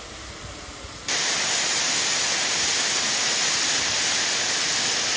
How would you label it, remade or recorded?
recorded